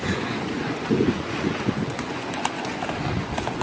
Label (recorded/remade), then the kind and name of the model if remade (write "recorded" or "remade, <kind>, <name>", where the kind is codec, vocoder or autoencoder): remade, vocoder, Vocos